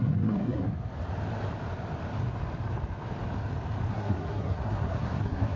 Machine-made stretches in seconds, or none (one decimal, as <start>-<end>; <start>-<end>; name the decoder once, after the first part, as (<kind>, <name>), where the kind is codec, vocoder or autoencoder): 0.0-0.7 (codec, SNAC); 3.9-5.6